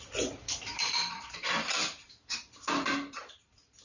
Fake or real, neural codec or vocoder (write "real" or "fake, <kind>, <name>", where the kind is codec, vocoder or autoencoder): fake, vocoder, BigVGAN v2